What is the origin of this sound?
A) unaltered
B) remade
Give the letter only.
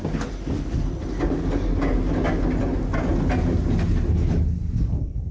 A